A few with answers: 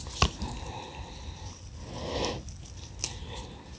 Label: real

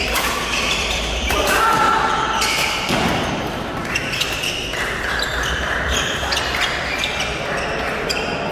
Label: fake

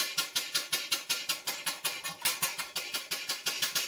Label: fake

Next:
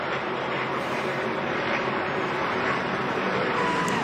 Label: fake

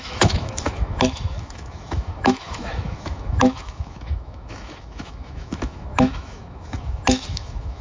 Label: fake